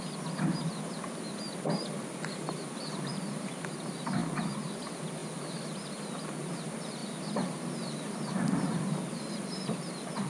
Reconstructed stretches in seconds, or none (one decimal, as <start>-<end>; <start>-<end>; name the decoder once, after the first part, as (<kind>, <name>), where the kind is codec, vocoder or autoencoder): 0.0-4.2 (vocoder, BigVGAN v2); 4.8-5.2; 6.5-10.3